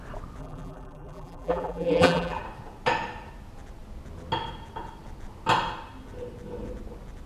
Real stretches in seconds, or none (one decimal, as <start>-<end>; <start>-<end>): 0.0-0.4; 2.4-7.3